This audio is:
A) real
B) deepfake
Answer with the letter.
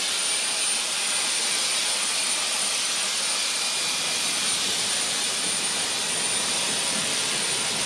A